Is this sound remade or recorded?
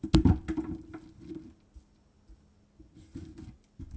recorded